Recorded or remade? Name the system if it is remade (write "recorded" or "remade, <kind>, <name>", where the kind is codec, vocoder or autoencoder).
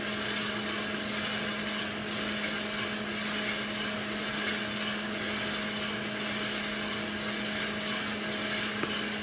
recorded